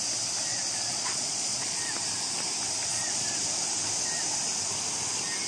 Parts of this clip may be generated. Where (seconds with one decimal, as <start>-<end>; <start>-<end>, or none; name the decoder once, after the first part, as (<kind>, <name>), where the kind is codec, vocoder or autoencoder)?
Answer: 0.5-1.9 (vocoder, Vocos); 2.9-3.4